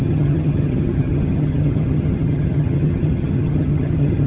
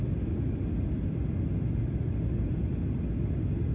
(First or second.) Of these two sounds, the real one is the second